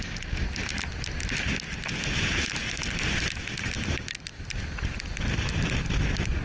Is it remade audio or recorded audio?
recorded